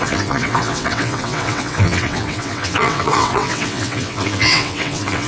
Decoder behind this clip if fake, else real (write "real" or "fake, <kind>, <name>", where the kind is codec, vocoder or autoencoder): fake, vocoder, WaveNeXt